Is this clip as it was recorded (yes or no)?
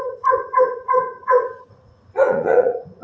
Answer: no